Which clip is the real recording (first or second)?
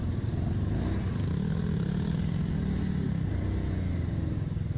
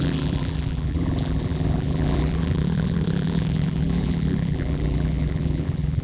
first